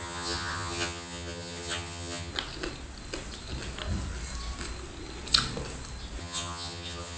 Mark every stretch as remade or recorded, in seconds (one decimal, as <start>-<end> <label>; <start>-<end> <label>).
0.0-2.3 remade; 2.3-6.2 recorded; 6.2-7.2 remade

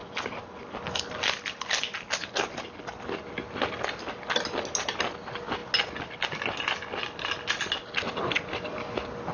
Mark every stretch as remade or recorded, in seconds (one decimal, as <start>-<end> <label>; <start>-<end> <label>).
0.0-9.3 recorded

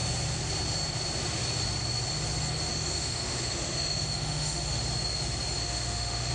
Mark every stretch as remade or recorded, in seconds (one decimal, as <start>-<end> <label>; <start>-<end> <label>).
0.0-2.7 recorded; 2.7-4.8 remade; 4.8-5.6 recorded; 5.6-6.3 remade

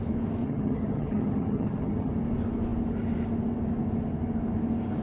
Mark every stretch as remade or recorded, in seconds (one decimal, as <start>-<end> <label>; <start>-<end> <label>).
0.0-0.4 recorded; 0.4-2.1 remade; 2.1-5.0 recorded

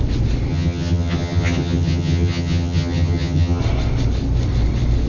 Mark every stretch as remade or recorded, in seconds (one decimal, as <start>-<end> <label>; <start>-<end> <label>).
0.0-0.5 recorded; 0.5-3.6 remade; 3.6-5.1 recorded

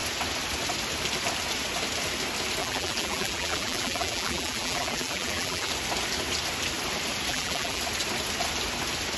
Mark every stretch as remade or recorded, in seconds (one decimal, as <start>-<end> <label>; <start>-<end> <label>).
0.0-2.6 recorded; 2.6-5.7 remade; 5.7-7.3 recorded; 7.3-7.8 remade; 7.8-9.2 recorded

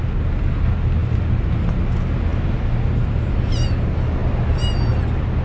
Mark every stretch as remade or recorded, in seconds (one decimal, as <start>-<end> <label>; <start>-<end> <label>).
0.0-5.4 recorded